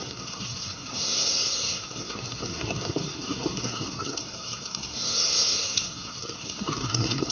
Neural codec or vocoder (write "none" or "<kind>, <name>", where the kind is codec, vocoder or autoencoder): codec, SNAC